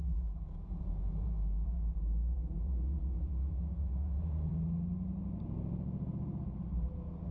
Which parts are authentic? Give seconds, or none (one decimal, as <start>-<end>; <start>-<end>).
4.5-7.3